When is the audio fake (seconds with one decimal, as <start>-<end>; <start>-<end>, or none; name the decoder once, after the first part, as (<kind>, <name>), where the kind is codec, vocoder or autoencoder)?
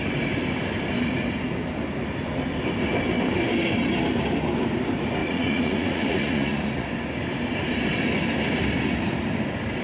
5.2-6.9 (vocoder, Vocos)